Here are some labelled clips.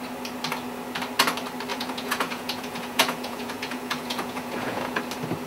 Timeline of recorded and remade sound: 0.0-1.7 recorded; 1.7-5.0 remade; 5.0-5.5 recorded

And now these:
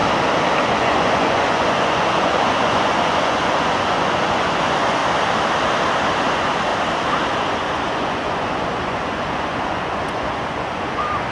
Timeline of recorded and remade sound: 0.0-0.6 recorded; 0.6-5.0 remade; 5.0-6.3 recorded; 6.3-6.7 remade; 6.7-7.4 recorded; 7.4-11.3 remade

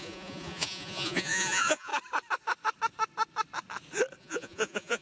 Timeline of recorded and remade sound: 0.0-1.9 remade; 1.9-4.2 recorded; 4.2-5.0 remade

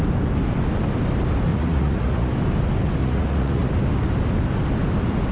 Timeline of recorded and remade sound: 0.0-1.5 recorded; 1.5-2.3 remade; 2.3-3.0 recorded; 3.0-3.7 remade; 3.7-5.3 recorded

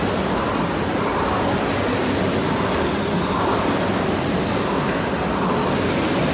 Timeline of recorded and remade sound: 0.0-6.3 recorded

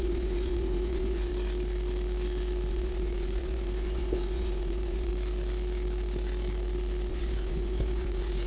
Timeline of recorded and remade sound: 0.0-1.3 remade; 1.3-2.7 recorded; 2.7-5.1 remade; 5.1-7.1 recorded; 7.1-8.5 remade